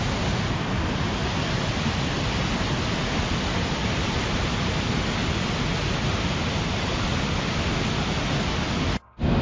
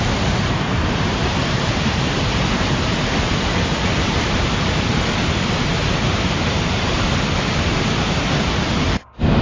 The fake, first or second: second